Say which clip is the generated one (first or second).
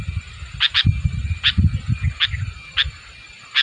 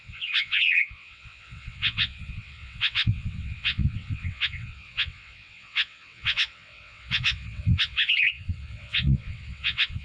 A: second